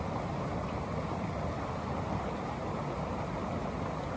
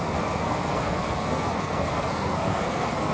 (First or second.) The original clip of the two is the first